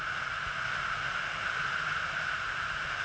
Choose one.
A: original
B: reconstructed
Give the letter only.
A